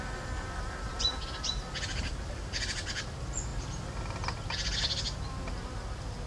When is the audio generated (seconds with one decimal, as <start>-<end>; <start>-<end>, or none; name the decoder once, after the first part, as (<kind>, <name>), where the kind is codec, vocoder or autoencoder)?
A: none